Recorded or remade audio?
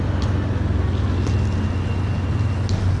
recorded